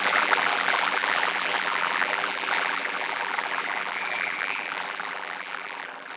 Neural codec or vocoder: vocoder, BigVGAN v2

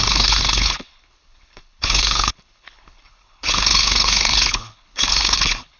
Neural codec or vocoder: codec, HILCodec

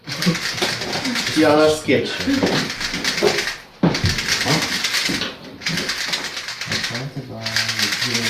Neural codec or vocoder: none